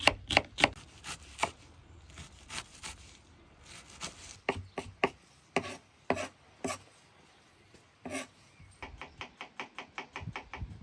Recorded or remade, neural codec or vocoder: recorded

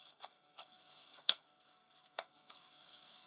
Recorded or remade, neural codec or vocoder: remade, codec, SNAC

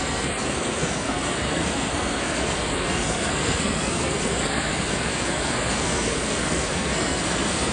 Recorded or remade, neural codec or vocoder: remade, codec, SNAC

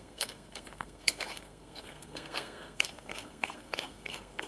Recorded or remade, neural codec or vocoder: remade, codec, SNAC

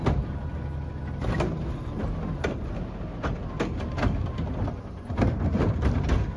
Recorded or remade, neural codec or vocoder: recorded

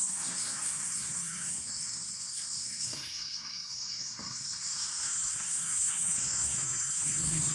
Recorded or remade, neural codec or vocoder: remade, codec, SNAC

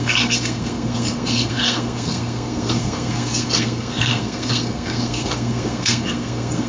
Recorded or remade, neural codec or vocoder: remade, codec, SNAC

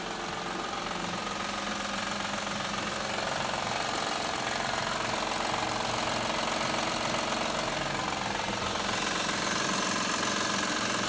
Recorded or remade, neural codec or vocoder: recorded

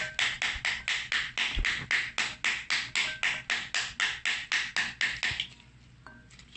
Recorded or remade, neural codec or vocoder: recorded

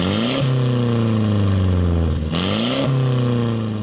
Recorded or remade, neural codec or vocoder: recorded